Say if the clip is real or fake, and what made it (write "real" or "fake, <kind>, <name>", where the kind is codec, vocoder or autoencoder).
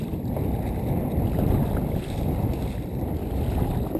real